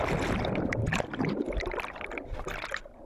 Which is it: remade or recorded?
remade